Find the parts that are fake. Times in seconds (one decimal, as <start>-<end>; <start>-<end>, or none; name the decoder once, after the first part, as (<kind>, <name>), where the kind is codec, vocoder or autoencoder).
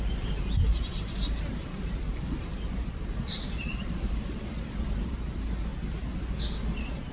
0.0-5.7 (vocoder, BigVGAN v2)